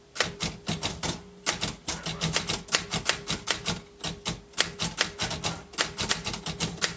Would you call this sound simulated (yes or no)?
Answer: no